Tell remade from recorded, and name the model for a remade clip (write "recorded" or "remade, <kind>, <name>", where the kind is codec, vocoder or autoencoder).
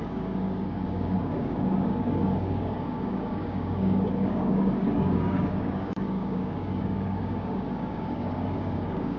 remade, codec, DAC